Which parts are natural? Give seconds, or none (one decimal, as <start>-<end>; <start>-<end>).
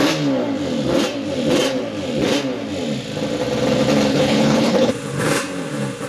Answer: 0.0-4.1; 4.9-6.1